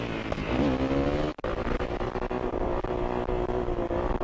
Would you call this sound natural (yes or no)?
yes